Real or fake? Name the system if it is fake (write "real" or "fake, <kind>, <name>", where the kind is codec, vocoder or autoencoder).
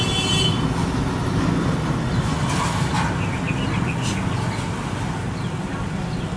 real